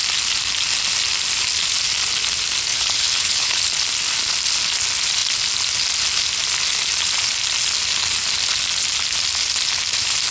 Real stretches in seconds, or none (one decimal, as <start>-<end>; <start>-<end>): 0.0-2.7; 3.6-10.3